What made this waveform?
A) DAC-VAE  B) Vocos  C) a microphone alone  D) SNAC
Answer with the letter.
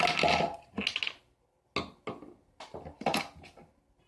C